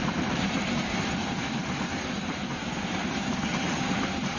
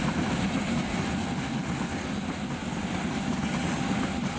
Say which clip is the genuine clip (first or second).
second